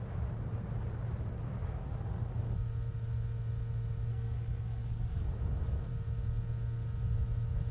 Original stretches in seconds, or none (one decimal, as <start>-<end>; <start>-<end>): 0.0-4.1; 5.2-7.7